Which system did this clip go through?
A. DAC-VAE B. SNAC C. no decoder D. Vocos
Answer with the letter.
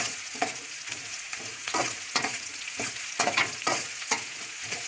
D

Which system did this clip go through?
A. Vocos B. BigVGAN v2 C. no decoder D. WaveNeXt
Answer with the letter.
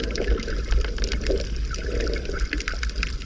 C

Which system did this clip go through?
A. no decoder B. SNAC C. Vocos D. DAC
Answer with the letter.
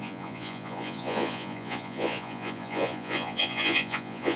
C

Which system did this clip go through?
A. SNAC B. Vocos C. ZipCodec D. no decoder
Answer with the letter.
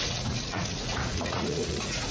B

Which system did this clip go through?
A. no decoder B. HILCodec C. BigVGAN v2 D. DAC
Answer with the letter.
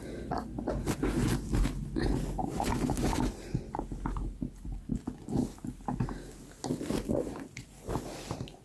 A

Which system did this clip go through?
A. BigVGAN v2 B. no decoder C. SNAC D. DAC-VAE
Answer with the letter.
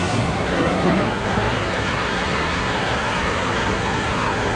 C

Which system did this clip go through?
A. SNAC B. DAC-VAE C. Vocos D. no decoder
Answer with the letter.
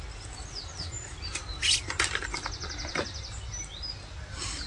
D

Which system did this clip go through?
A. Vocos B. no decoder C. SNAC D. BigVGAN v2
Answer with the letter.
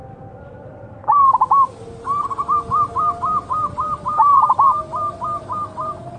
D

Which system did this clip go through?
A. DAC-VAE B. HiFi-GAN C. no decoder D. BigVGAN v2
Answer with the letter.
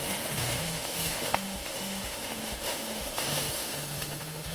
A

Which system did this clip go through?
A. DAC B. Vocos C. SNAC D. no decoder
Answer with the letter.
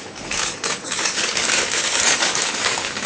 A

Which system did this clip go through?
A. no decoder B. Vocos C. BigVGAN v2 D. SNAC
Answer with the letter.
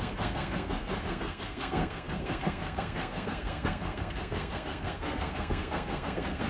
D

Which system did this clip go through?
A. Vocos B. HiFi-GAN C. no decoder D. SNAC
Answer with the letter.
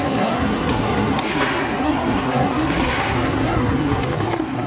D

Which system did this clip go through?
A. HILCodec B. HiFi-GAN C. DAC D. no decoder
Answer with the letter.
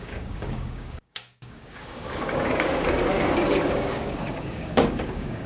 C